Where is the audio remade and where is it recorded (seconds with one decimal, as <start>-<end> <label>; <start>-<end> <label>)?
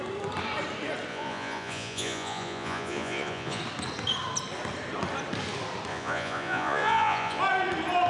0.0-1.1 recorded; 1.1-3.6 remade; 3.6-5.9 recorded; 5.9-7.4 remade; 7.4-8.1 recorded